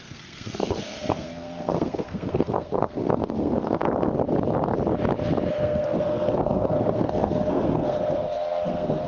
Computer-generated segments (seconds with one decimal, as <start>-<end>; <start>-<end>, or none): 0.0-3.8; 5.5-9.1